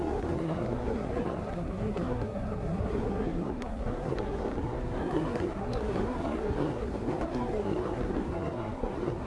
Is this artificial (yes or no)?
yes